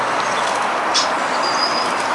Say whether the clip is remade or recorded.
remade